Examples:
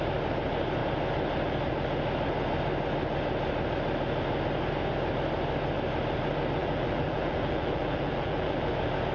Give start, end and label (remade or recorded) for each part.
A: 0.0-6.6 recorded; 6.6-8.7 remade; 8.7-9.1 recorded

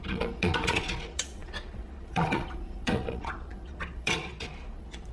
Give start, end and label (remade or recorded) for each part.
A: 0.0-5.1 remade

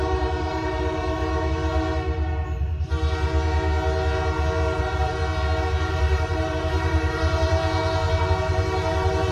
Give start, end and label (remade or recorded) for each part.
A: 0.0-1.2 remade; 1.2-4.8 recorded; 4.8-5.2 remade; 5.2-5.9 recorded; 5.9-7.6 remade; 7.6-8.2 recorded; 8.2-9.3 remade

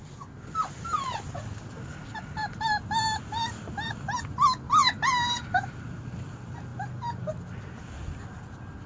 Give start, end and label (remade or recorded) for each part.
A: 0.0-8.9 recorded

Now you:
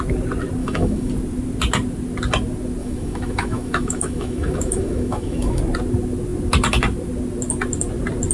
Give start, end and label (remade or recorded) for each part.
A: 0.0-0.6 recorded; 0.6-1.1 remade; 1.1-2.8 recorded; 2.8-5.6 remade; 5.6-8.3 recorded

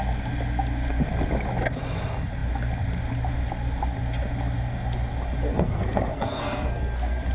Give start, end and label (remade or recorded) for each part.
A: 0.0-5.5 recorded; 5.5-7.3 remade

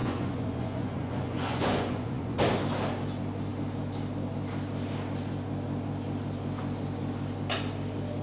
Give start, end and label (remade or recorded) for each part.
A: 0.0-2.4 remade; 2.4-8.2 recorded